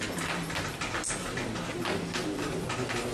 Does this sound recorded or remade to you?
recorded